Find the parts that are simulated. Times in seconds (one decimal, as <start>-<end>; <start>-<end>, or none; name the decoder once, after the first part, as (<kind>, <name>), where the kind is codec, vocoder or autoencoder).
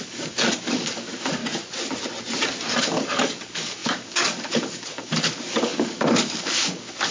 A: 0.0-1.4 (codec, DAC); 2.8-7.1